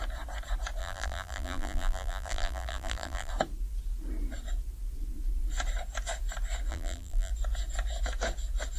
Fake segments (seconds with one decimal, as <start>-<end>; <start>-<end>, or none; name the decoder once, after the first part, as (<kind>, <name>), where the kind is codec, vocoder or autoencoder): 0.8-3.3 (vocoder, BigVGAN v2); 6.7-7.3